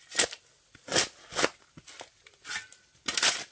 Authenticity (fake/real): real